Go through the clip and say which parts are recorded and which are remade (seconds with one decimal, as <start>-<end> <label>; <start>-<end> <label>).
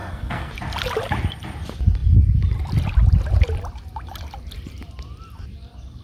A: 0.0-0.5 remade; 0.5-6.0 recorded